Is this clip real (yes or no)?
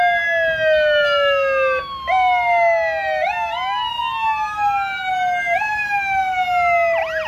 yes